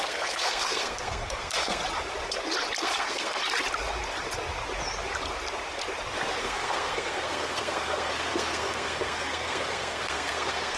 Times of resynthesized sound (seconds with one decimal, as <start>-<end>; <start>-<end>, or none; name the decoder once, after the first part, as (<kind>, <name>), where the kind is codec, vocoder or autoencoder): 0.0-1.8 (codec, SNAC); 2.8-3.4; 6.4-10.8